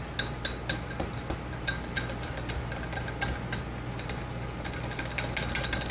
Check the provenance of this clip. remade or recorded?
recorded